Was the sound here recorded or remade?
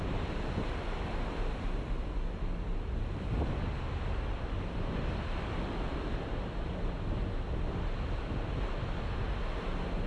recorded